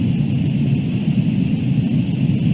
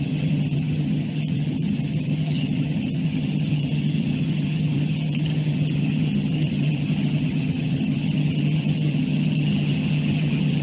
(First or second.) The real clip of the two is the first